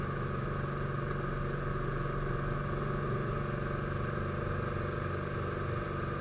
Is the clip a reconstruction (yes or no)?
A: no